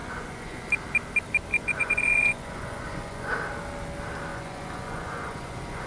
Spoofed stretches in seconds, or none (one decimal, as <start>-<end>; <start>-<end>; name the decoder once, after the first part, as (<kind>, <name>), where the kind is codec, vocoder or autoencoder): 0.0-0.6 (vocoder, Vocos); 1.5-3.3; 4.3-5.9